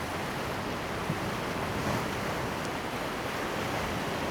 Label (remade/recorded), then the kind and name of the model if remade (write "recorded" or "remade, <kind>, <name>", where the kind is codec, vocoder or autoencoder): recorded